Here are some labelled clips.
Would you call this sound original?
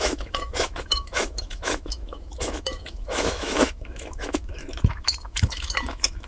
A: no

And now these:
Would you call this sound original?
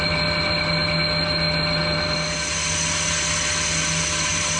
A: yes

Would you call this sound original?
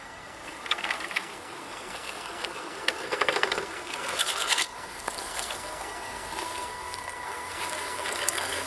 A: no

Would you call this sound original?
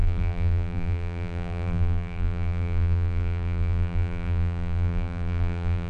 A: no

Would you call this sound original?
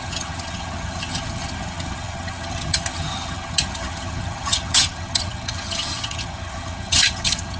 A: no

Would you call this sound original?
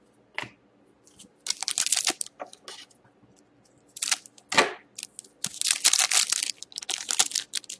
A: yes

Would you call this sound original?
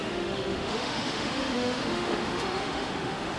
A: no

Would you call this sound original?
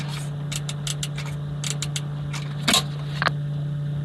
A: yes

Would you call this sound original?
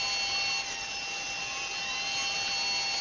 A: yes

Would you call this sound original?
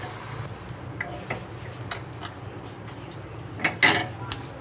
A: yes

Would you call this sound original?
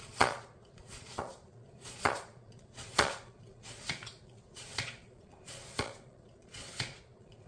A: no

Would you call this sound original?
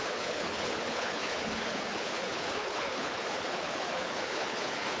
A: no